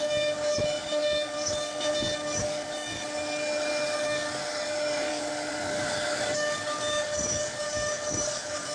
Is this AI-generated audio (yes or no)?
yes